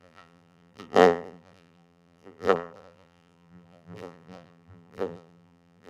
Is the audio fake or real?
fake